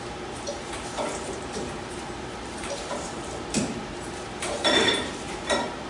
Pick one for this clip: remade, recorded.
remade